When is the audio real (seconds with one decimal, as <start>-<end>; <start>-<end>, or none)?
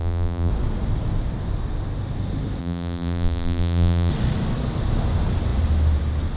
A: 0.5-2.6; 4.1-6.4